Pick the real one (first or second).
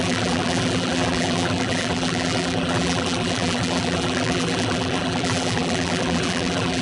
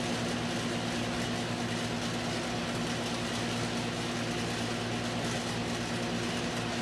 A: second